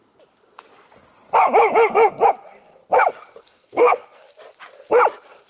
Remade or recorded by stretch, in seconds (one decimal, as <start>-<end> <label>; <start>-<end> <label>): 0.0-3.4 recorded; 3.4-4.2 remade; 4.2-5.5 recorded